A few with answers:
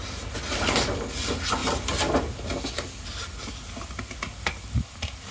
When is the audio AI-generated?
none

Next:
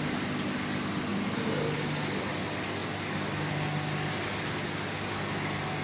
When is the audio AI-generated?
none

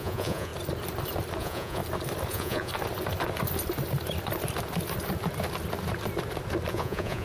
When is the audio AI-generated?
0.0-0.5 (vocoder, Vocos); 1.4-1.8; 2.3-2.7; 6.7-7.2

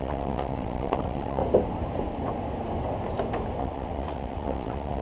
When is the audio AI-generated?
0.0-1.4 (vocoder, WaveNeXt); 3.6-5.0